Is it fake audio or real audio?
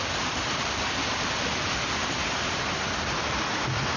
real